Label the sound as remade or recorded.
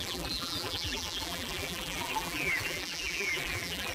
remade